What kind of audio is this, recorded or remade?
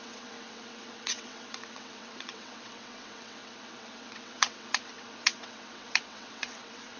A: remade